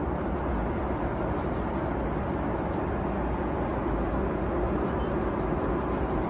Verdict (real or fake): real